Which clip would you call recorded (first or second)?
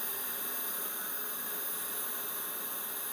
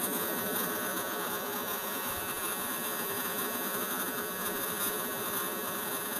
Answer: first